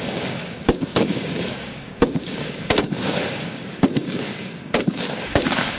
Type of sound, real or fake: fake